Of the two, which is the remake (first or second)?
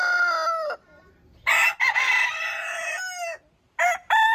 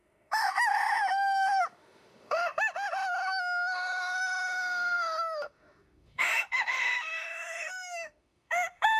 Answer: second